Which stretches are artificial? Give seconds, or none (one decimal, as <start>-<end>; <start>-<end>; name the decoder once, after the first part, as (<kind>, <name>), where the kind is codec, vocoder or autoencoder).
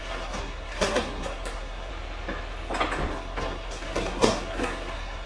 0.0-1.9 (codec, SNAC); 3.1-5.3